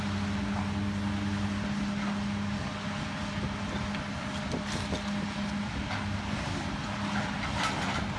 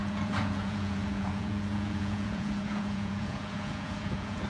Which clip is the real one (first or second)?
first